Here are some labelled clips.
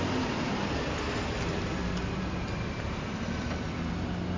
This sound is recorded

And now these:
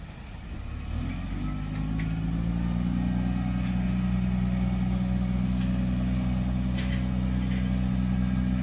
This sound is recorded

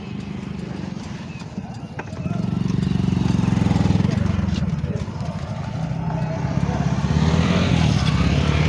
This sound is recorded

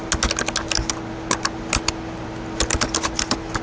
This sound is recorded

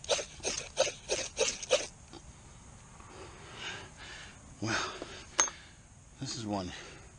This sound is recorded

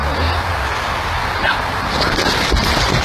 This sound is recorded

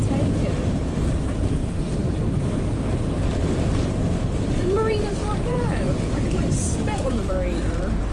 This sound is remade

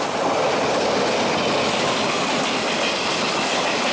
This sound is recorded